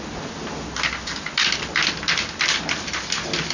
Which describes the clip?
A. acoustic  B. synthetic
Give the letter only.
A